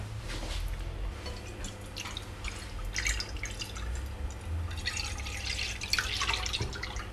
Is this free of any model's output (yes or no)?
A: yes